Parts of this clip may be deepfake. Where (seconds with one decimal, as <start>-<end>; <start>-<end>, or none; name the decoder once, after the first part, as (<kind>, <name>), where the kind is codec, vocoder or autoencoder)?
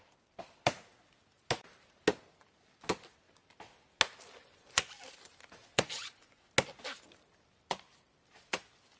4.4-4.9 (vocoder, Vocos); 5.6-6.5